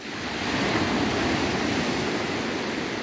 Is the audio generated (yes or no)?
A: no